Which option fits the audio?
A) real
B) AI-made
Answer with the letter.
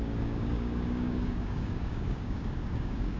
B